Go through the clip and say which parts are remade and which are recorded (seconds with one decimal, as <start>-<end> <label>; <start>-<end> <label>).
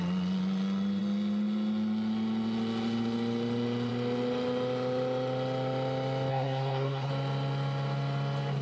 0.0-6.3 recorded; 6.3-7.1 remade; 7.1-8.6 recorded